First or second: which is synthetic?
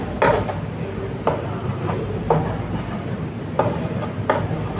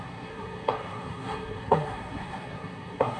second